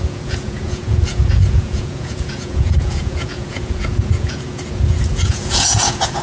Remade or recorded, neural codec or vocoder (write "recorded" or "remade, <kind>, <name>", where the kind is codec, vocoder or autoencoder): remade, vocoder, Vocos